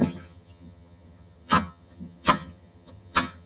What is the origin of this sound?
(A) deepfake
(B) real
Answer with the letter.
A